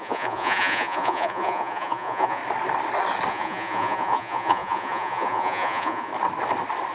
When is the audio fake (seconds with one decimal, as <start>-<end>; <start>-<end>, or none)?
0.0-2.4; 3.3-6.1